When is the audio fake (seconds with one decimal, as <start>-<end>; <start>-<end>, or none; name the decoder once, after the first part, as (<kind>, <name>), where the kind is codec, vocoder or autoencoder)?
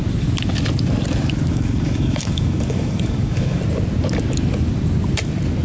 1.5-3.6 (codec, DAC)